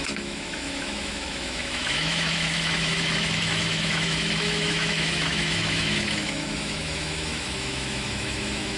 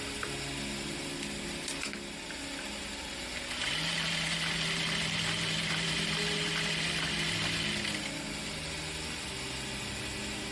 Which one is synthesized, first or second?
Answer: first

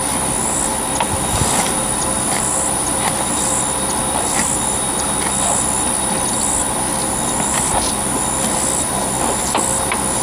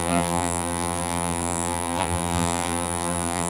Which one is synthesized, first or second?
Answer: second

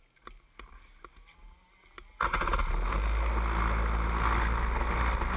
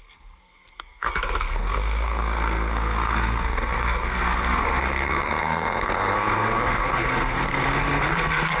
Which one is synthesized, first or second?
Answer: second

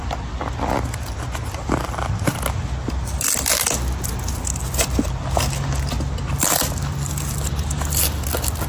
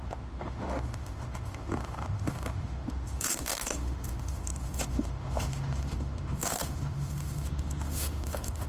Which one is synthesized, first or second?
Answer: second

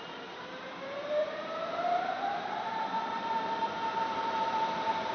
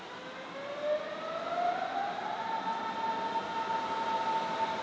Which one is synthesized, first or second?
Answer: first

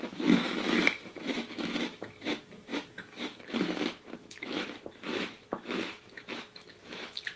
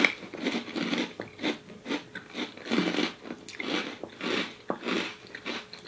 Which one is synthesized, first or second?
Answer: first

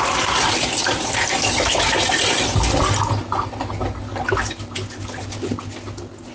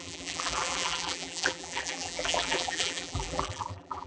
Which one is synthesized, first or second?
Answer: second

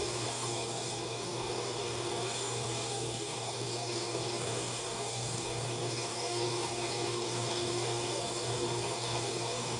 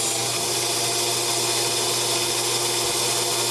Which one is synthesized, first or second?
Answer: first